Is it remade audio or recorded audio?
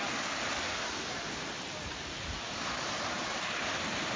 recorded